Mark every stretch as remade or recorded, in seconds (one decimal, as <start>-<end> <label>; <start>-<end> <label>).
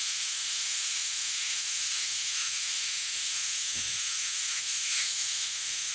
0.0-5.9 remade